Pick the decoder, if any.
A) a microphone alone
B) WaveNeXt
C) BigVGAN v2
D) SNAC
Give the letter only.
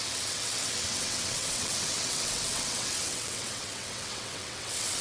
B